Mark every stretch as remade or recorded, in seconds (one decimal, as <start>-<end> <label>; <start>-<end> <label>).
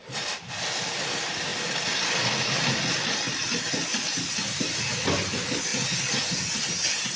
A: 0.0-7.2 recorded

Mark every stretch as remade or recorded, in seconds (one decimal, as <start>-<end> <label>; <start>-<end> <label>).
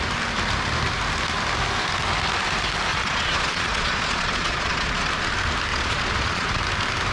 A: 0.0-2.9 recorded; 2.9-5.1 remade; 5.1-5.7 recorded; 5.7-6.6 remade; 6.6-7.1 recorded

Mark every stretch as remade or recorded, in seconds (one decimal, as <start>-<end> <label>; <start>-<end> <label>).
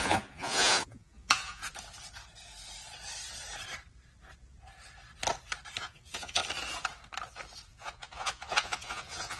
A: 0.0-1.6 remade; 1.6-5.8 recorded; 5.8-6.4 remade; 6.4-7.7 recorded; 7.7-9.4 remade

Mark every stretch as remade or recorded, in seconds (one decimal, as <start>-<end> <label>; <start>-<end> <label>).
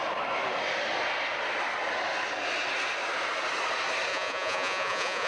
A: 0.0-4.1 recorded; 4.1-5.3 remade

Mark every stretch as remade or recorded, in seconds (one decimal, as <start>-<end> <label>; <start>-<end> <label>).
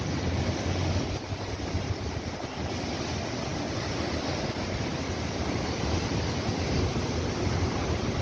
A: 0.0-8.2 recorded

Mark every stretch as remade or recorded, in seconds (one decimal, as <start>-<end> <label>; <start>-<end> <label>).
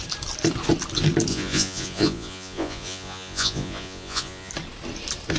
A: 0.0-1.3 recorded; 1.3-4.5 remade; 4.5-5.4 recorded